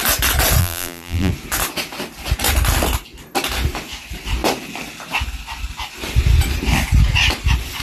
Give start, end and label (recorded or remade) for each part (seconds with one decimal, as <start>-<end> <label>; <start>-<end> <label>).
0.0-0.6 recorded; 0.6-1.3 remade; 1.3-7.8 recorded